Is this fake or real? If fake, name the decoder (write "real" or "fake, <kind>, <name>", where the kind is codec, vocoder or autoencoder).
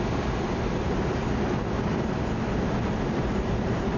real